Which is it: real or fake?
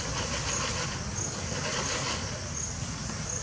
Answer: real